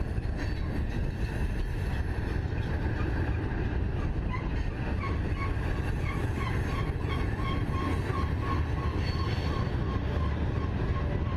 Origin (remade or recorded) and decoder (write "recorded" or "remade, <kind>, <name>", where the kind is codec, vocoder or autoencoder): recorded